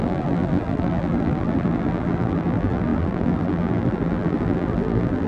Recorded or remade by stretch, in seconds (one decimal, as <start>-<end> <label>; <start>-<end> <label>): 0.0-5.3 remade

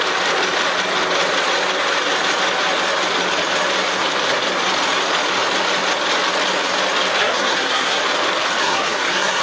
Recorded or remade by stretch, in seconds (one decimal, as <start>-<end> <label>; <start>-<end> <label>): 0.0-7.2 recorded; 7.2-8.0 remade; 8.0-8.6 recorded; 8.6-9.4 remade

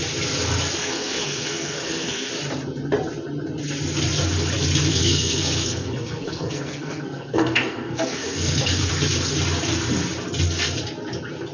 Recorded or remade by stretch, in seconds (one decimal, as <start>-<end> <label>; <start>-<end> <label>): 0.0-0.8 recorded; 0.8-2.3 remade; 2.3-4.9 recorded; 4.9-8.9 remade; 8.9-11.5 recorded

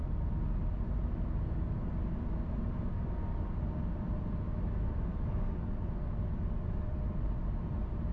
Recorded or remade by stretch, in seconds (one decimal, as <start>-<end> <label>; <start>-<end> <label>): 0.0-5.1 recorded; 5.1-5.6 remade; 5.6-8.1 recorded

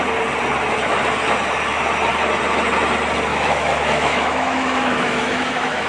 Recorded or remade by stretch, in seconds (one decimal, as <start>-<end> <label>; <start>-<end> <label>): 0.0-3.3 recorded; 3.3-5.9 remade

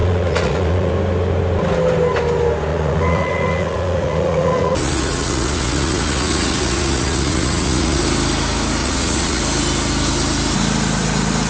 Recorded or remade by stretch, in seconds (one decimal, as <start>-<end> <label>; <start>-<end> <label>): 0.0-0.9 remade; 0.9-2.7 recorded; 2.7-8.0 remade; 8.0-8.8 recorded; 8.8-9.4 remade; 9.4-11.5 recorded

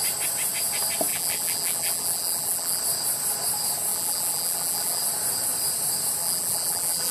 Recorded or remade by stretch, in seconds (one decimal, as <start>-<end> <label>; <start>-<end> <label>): 0.0-1.1 recorded; 1.1-2.8 remade; 2.8-3.9 recorded; 3.9-5.0 remade; 5.0-6.2 recorded; 6.2-7.1 remade

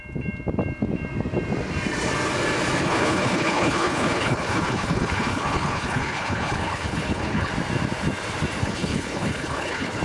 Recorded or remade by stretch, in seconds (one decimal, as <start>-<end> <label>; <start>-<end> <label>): 0.0-2.8 recorded; 2.8-7.5 remade; 7.5-8.6 recorded; 8.6-10.0 remade